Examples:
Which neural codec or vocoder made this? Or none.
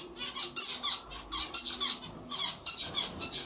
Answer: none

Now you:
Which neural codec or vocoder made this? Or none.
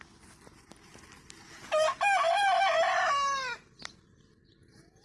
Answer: none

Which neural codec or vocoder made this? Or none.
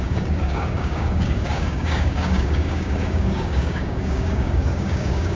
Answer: codec, DAC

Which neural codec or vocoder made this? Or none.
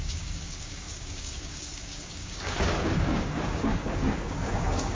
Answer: codec, DAC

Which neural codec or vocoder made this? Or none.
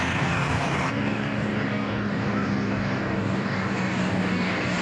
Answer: codec, DAC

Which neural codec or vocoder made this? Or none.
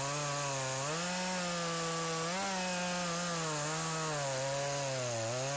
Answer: none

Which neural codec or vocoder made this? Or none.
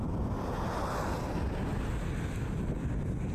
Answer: none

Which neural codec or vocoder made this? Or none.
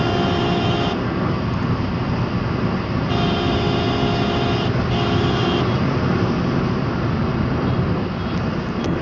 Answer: none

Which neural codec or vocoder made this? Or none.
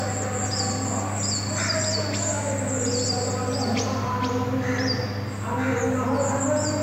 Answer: none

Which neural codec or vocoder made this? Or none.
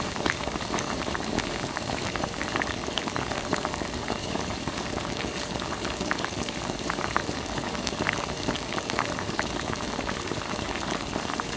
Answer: codec, DAC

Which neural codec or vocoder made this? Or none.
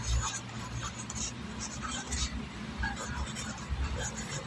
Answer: none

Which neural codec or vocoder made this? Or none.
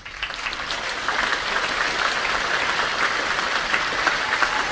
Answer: none